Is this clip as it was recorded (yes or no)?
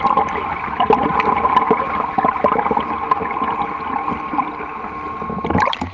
yes